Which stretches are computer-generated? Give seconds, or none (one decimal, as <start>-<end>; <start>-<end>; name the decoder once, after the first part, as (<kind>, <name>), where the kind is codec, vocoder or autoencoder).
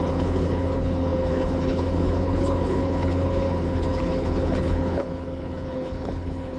0.0-6.6 (codec, HILCodec)